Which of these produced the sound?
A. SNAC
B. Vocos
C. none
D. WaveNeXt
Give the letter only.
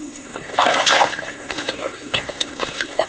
A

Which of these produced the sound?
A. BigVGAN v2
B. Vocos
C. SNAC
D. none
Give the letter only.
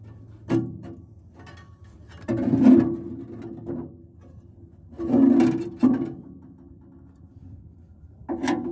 D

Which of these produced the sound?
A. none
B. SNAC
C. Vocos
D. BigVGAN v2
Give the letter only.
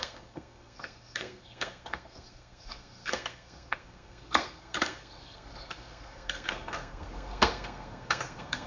B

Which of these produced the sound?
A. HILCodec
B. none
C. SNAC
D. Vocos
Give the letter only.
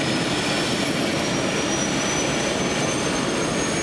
B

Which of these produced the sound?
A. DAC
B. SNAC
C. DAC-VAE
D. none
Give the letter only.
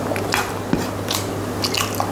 D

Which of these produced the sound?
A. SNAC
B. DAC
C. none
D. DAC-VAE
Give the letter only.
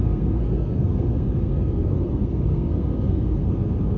A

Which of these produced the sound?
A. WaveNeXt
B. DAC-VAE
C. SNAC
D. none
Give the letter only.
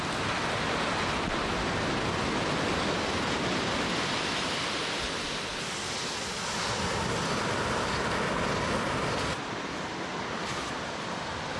D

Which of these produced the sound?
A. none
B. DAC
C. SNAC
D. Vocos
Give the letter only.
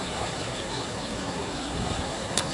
C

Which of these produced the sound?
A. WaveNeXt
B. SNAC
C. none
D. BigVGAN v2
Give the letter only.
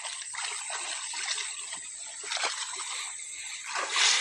C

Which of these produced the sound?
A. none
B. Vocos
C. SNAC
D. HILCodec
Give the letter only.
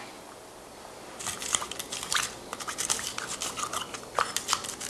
A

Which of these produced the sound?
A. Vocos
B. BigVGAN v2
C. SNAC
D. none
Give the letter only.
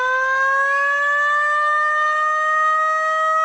D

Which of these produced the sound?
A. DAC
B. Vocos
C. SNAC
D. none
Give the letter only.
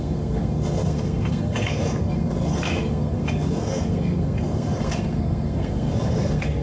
C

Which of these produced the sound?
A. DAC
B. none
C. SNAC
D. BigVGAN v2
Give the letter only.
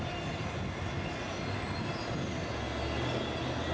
B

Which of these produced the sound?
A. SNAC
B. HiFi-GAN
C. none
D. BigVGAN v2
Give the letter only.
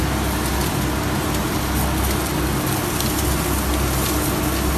C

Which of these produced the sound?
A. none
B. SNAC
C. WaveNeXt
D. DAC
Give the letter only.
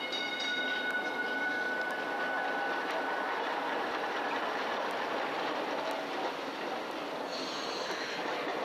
A